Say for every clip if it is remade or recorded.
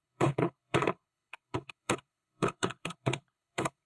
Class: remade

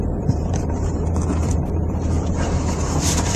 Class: remade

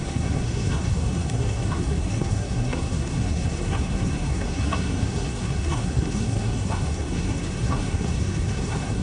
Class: remade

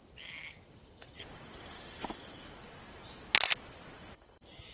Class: recorded